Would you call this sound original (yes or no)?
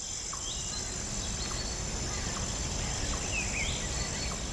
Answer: yes